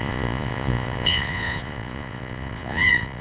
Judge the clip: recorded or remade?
remade